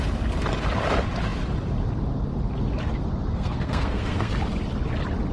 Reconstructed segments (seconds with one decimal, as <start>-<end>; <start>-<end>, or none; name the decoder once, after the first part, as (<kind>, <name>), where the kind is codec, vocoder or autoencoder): 3.3-4.3 (codec, SNAC)